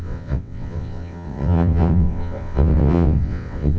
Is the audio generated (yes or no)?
yes